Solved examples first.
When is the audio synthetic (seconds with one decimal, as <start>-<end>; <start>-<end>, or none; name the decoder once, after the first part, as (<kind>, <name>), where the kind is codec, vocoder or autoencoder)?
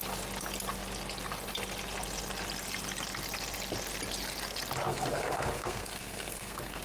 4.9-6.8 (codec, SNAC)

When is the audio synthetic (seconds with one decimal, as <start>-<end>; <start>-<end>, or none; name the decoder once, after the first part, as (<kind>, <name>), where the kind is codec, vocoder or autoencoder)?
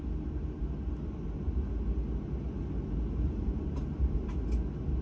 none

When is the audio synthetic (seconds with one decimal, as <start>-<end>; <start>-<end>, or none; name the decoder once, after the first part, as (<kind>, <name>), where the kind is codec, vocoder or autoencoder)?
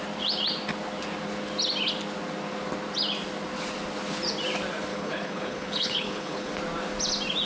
4.9-6.5 (codec, HILCodec)